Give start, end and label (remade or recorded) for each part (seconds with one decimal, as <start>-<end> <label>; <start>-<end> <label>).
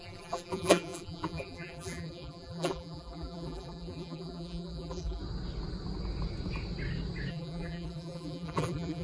0.0-5.2 remade; 5.2-7.3 recorded; 7.3-9.0 remade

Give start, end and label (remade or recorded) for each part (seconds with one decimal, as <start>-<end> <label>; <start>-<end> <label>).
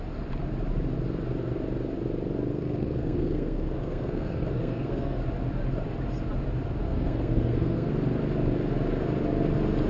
0.0-2.5 recorded; 2.5-5.2 remade; 5.2-6.8 recorded; 6.8-7.9 remade; 7.9-9.9 recorded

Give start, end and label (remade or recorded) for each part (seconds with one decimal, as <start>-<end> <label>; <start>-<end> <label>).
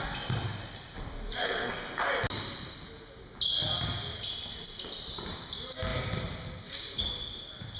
0.0-1.4 recorded; 1.4-2.0 remade; 2.0-7.8 recorded